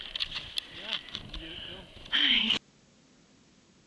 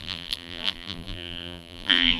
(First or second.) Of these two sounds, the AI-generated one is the second